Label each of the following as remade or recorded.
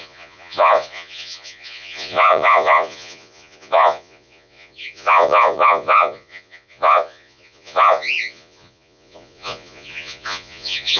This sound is remade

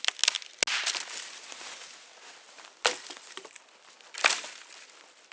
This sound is recorded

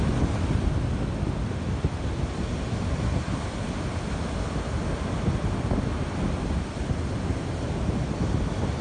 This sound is recorded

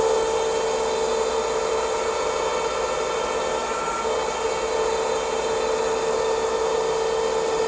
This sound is recorded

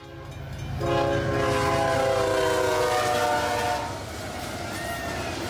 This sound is recorded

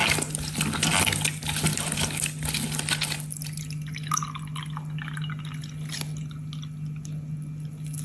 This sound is recorded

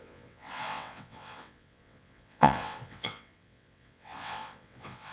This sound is remade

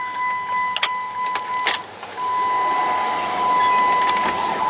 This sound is recorded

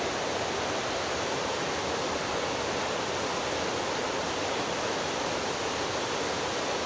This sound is recorded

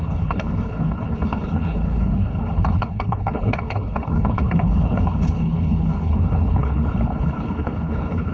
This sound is remade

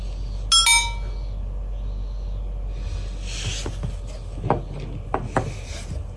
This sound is recorded